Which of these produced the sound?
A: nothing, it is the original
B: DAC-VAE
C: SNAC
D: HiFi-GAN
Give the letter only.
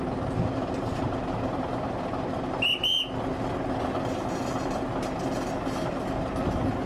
A